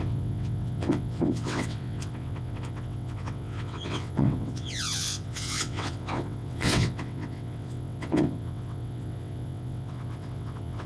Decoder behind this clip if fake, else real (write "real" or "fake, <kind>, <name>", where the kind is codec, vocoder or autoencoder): fake, vocoder, WaveNeXt